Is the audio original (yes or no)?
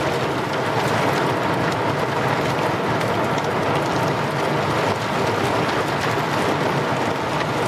yes